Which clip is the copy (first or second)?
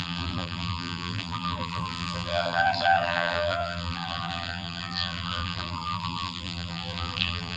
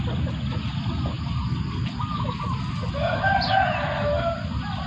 first